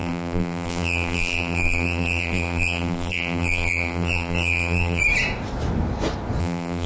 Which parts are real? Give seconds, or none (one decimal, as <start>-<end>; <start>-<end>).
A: 5.0-6.4